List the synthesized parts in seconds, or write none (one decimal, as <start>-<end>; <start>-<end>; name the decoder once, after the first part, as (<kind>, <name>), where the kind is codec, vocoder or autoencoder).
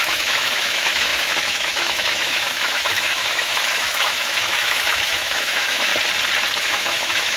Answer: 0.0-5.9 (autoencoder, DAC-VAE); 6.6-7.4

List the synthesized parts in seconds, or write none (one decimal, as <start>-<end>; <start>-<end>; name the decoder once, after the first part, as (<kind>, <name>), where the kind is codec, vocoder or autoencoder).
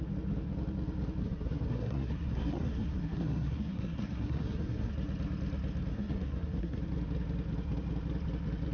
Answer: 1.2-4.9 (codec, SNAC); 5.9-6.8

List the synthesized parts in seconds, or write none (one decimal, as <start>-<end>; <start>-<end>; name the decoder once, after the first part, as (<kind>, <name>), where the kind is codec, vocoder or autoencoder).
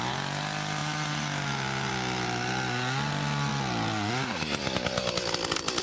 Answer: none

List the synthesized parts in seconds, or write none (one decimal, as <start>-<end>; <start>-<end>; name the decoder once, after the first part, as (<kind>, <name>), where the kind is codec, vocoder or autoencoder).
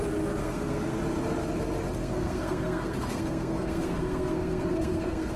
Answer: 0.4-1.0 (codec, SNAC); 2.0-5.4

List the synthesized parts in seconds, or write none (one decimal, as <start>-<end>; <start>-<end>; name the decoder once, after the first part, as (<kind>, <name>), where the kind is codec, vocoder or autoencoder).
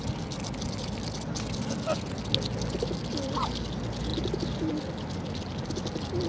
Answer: 4.1-4.7 (vocoder, BigVGAN v2)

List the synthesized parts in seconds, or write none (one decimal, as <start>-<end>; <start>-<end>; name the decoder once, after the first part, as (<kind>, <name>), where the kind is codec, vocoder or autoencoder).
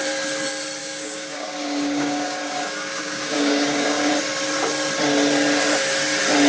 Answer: 0.8-4.1 (codec, DAC)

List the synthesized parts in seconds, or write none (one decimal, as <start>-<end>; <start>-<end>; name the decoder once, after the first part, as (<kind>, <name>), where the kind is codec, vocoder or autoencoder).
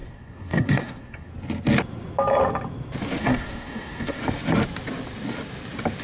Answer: 0.0-1.3 (codec, SNAC); 3.2-4.2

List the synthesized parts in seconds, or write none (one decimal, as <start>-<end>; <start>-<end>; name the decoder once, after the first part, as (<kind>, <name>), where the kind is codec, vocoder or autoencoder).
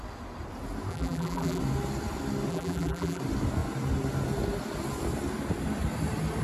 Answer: 0.9-1.6 (vocoder, BigVGAN v2); 2.5-3.2